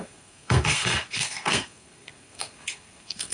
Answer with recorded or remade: remade